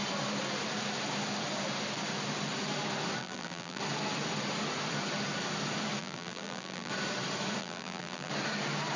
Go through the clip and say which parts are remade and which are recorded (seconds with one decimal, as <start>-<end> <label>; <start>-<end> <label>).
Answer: 0.0-3.2 recorded; 3.2-3.8 remade; 3.8-6.0 recorded; 6.0-6.9 remade; 6.9-7.6 recorded; 7.6-8.3 remade; 8.3-9.0 recorded